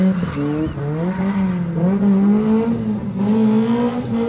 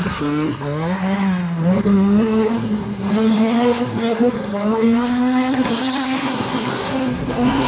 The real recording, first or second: first